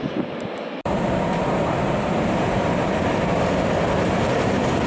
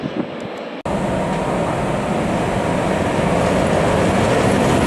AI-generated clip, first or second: first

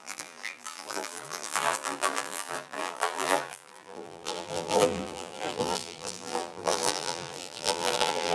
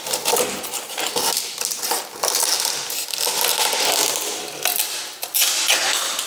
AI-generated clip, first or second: first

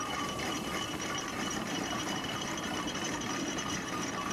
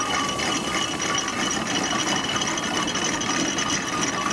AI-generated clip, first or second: first